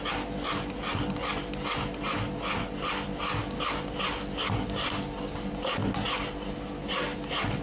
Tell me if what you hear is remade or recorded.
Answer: recorded